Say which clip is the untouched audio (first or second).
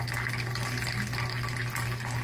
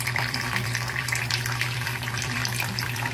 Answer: first